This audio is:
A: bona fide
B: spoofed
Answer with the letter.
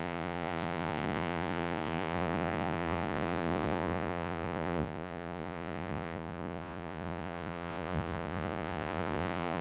B